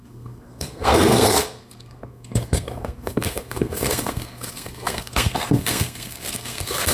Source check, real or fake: fake